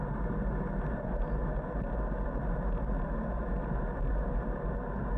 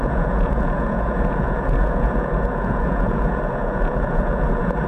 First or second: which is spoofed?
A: second